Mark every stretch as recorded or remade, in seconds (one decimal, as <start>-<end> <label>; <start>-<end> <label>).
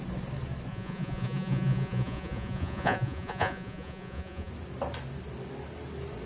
0.0-0.7 recorded; 0.7-4.5 remade; 4.5-6.3 recorded